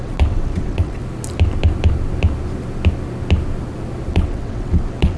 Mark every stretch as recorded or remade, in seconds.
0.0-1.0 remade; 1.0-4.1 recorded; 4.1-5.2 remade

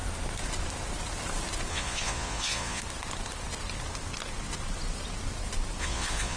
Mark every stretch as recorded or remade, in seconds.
0.0-1.7 recorded; 1.7-2.8 remade; 2.8-5.8 recorded; 5.8-6.4 remade

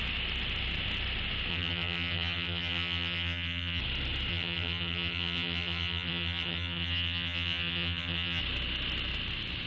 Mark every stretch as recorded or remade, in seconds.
0.0-1.5 recorded; 1.5-3.8 remade; 3.8-4.3 recorded; 4.3-8.4 remade; 8.4-9.7 recorded

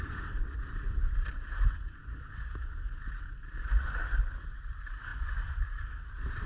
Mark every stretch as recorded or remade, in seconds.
0.0-6.5 remade